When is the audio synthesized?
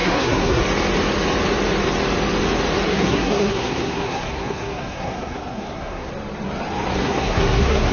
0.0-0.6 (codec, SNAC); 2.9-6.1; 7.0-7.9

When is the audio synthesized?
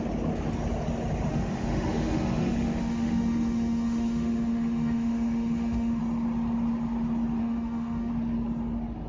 1.3-6.0 (autoencoder, DAC-VAE); 7.4-8.1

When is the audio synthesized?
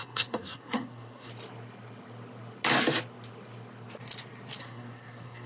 0.0-1.3 (codec, SNAC); 4.6-5.5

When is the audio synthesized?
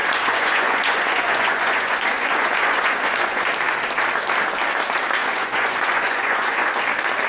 0.0-3.5 (vocoder, Vocos); 5.2-6.8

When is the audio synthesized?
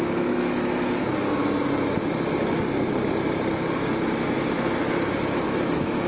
0.0-1.4 (autoencoder, DAC-VAE); 4.8-6.1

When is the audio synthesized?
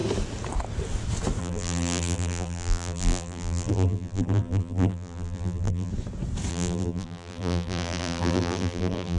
1.4-5.9 (vocoder, BigVGAN v2); 6.5-9.2